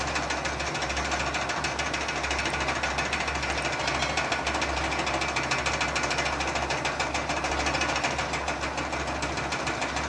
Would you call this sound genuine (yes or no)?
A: yes